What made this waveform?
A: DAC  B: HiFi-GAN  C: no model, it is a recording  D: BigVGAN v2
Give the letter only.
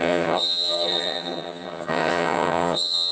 B